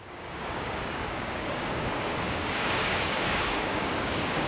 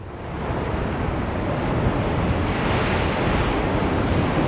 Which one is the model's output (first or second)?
first